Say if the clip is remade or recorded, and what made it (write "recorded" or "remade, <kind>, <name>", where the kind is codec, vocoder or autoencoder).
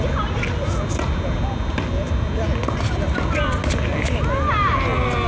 recorded